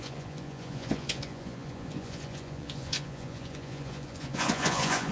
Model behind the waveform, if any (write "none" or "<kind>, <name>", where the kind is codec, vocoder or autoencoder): vocoder, Vocos